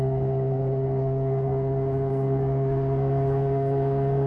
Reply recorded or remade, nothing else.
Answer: remade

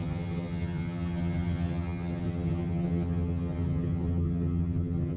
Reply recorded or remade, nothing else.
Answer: remade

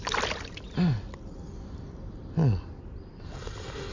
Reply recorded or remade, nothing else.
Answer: recorded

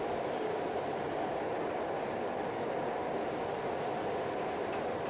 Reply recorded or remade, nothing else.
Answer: recorded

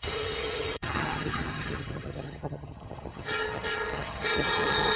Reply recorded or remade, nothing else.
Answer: remade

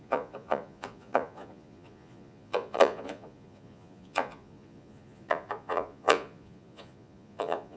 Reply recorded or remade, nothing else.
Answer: remade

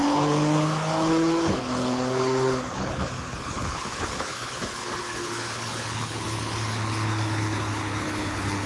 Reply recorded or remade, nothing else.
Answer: remade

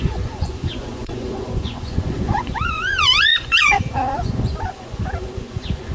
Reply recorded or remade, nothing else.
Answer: remade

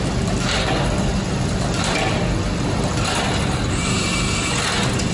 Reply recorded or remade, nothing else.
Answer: recorded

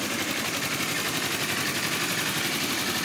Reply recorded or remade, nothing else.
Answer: remade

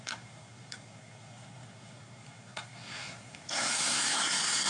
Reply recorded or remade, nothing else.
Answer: remade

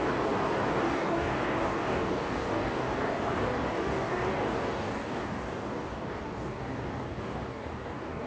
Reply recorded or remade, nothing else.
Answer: remade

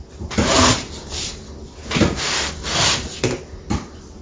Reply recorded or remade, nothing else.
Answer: recorded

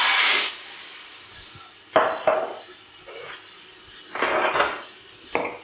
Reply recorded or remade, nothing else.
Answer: recorded